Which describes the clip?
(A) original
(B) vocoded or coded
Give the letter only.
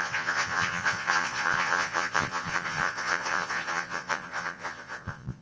B